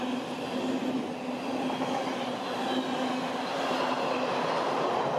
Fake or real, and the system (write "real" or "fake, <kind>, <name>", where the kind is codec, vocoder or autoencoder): real